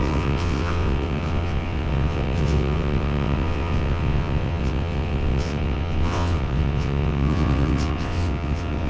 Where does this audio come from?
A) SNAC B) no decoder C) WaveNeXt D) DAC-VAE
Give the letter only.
C